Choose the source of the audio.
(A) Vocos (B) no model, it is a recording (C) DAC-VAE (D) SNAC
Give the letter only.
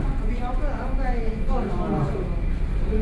B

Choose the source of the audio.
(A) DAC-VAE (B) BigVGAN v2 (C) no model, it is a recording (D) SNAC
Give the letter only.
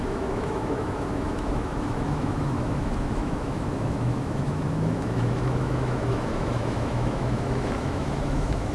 A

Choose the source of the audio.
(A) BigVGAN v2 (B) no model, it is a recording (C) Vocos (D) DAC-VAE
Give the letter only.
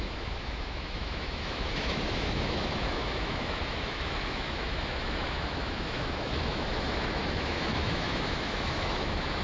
D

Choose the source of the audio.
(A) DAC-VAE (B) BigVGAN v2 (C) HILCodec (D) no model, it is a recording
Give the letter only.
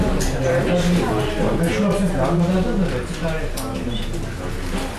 D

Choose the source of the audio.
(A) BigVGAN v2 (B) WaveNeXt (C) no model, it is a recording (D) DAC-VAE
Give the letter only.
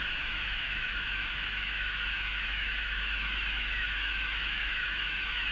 D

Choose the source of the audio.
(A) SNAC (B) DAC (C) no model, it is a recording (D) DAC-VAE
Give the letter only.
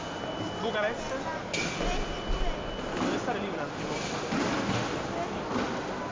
C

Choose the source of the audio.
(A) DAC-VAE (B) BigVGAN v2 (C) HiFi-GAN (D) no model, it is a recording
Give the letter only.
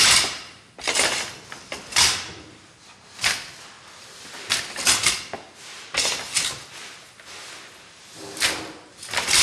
D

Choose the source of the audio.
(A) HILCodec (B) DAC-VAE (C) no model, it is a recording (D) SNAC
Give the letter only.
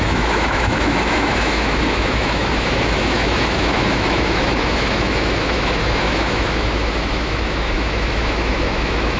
B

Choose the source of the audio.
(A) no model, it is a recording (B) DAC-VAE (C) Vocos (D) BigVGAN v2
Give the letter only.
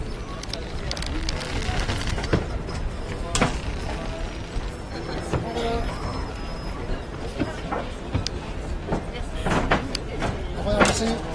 A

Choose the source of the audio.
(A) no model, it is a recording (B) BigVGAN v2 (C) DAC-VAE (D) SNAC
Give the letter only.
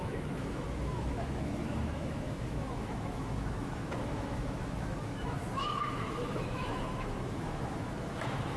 C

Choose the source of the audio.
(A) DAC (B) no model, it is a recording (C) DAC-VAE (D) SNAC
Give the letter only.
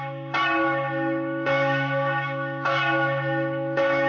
C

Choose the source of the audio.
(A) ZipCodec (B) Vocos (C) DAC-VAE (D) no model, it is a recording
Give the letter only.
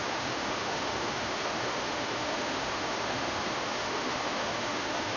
C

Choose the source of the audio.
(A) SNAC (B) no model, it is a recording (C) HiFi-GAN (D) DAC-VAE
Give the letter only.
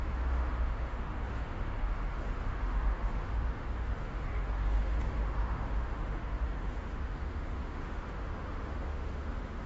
D